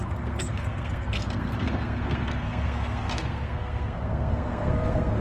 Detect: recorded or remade remade